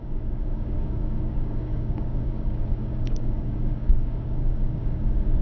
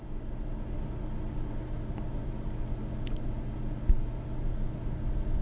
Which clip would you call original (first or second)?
second